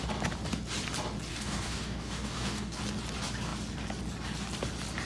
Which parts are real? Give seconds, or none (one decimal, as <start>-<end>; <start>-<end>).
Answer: 0.0-1.3; 2.8-5.1